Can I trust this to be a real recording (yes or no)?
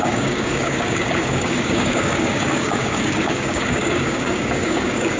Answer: no